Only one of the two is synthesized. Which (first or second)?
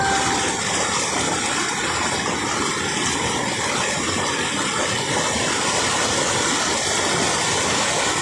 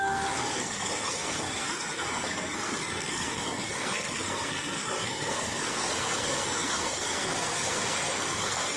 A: second